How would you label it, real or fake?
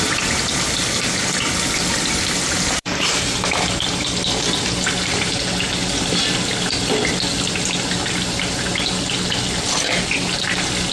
real